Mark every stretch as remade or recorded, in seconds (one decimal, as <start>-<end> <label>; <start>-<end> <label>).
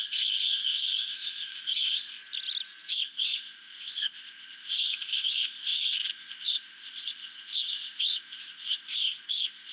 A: 0.0-2.2 remade; 2.2-2.9 recorded; 2.9-9.7 remade